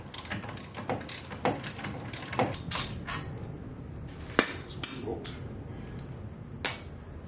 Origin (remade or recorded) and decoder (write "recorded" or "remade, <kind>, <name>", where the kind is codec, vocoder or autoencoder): recorded